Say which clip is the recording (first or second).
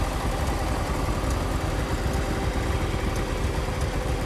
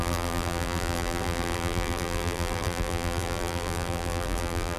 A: first